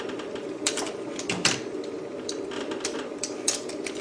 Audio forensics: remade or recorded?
remade